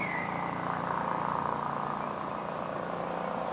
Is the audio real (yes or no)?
yes